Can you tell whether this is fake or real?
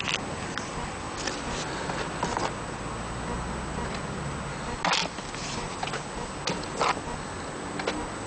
real